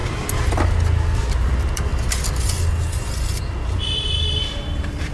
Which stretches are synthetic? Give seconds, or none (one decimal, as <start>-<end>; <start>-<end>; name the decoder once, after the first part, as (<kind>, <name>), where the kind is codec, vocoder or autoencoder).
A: 1.3-1.9 (vocoder, BigVGAN v2); 3.9-5.1